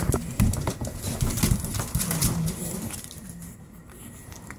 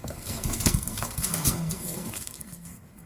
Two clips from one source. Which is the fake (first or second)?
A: second